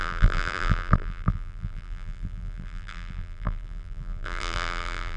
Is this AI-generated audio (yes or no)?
yes